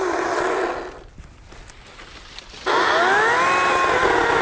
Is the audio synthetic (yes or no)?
no